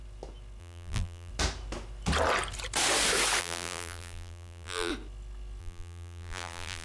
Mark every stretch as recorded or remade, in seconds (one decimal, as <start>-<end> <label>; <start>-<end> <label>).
0.0-0.6 recorded; 0.6-1.3 remade; 1.3-3.4 recorded; 3.4-4.9 remade; 4.9-5.6 recorded; 5.6-6.8 remade